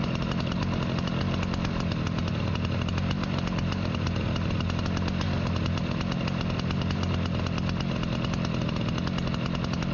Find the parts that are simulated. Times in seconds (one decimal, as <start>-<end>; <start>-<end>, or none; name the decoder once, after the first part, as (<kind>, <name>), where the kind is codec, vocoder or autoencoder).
none